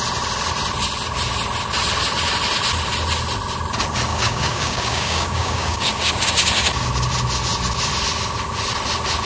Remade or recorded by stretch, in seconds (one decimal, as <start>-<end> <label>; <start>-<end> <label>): 0.0-4.1 recorded; 4.1-6.1 remade; 6.1-9.2 recorded